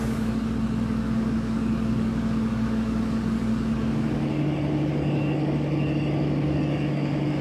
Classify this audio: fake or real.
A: fake